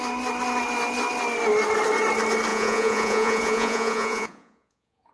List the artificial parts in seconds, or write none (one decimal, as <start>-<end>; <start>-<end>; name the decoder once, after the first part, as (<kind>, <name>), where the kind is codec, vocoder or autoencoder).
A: 2.5-5.1 (vocoder, Vocos)